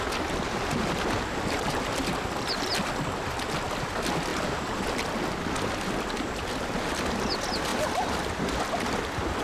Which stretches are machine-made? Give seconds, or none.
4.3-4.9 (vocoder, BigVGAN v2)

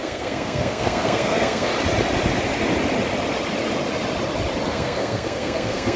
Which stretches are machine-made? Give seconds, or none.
0.0-1.7 (codec, SNAC); 4.7-6.0

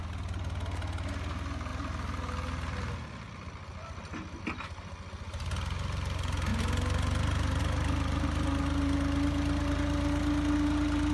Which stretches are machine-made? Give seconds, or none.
none

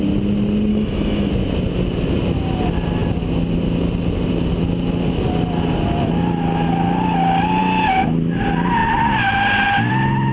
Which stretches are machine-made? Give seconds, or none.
0.7-1.3 (autoencoder, DAC-VAE)

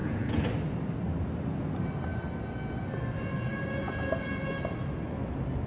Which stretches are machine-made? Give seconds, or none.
0.0-0.5 (vocoder, Vocos)

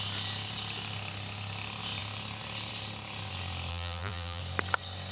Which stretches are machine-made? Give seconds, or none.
3.7-4.4 (vocoder, BigVGAN v2)